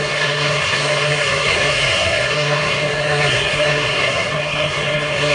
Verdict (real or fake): fake